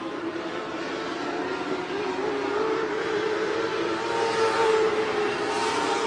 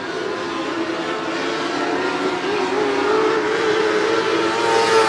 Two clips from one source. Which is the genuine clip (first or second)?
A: second